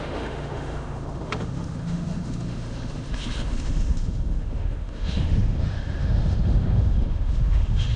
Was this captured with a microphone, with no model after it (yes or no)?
no